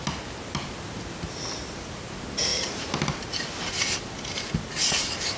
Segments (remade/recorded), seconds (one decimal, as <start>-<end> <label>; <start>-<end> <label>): 0.0-2.5 recorded; 2.5-3.4 remade; 3.4-5.4 recorded